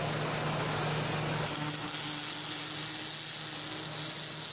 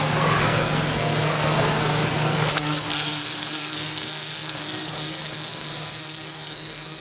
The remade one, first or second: second